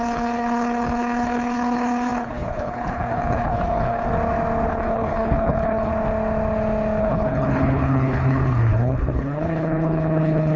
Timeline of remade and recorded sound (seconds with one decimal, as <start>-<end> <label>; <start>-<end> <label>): 0.0-4.1 remade; 4.1-4.7 recorded; 4.7-5.9 remade; 5.9-7.0 recorded; 7.0-10.6 remade